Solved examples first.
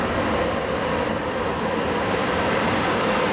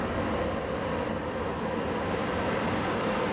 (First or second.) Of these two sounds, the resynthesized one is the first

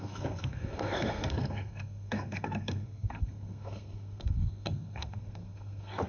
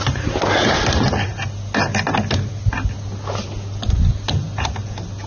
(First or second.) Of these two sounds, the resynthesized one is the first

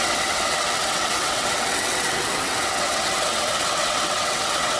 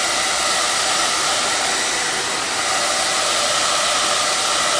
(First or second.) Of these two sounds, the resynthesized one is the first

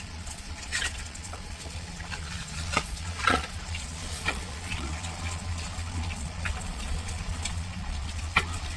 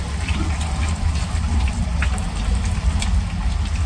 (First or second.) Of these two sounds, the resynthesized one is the first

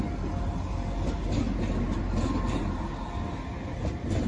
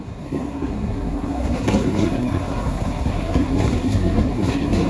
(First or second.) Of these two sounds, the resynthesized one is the second